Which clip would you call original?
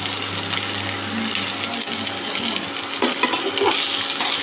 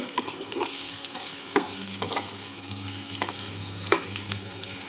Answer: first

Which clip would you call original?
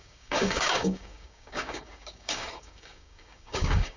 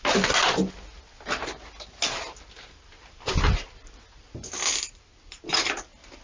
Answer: second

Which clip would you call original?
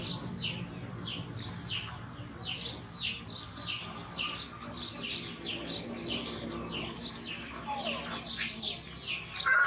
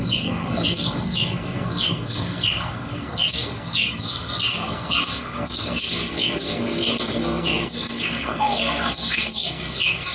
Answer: first